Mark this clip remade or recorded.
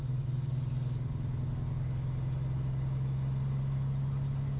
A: recorded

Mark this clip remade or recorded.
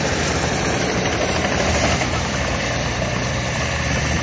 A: remade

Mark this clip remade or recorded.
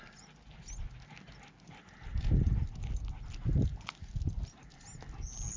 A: recorded